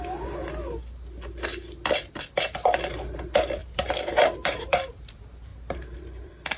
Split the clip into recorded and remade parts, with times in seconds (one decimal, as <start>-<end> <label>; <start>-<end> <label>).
0.0-3.6 recorded; 3.6-5.1 remade; 5.1-5.5 recorded; 5.5-6.6 remade